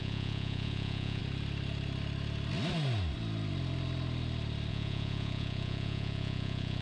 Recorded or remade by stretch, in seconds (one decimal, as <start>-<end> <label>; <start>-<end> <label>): 0.0-1.2 remade; 1.2-4.7 recorded; 4.7-6.8 remade